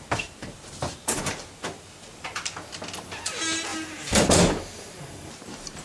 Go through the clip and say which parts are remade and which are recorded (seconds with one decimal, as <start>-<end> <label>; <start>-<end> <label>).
0.0-0.4 recorded; 0.4-1.3 remade; 1.3-3.7 recorded; 3.7-5.8 remade